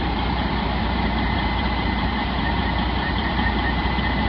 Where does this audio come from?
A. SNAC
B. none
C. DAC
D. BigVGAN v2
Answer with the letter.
D